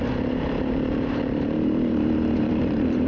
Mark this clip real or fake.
fake